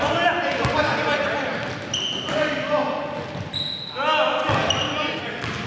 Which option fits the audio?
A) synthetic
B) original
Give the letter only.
B